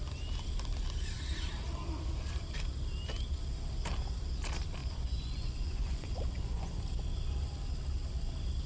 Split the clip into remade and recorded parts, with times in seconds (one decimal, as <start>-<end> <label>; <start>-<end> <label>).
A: 0.0-4.8 recorded; 4.8-6.8 remade; 6.8-8.7 recorded